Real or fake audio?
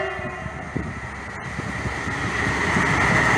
real